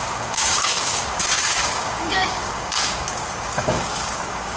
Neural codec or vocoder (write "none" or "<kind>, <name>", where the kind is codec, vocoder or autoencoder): codec, DAC